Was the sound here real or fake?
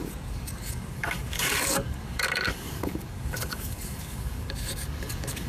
fake